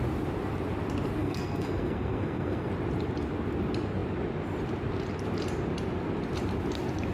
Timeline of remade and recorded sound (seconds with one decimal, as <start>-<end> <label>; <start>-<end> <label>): 0.0-1.2 recorded; 1.2-2.7 remade; 2.7-7.1 recorded